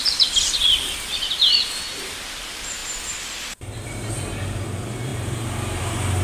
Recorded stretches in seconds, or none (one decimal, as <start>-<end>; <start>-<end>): none